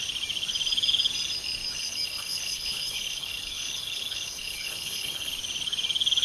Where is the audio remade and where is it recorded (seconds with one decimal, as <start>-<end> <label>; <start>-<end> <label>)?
0.0-1.8 recorded; 1.8-5.3 remade; 5.3-6.2 recorded